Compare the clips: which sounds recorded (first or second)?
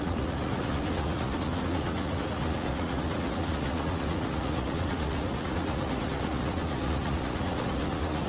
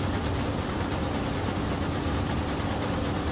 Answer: second